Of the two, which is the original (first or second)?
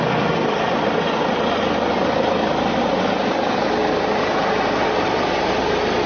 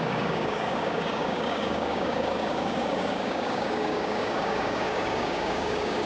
first